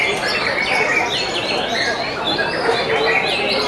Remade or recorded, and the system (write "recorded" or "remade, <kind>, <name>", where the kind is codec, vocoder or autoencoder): recorded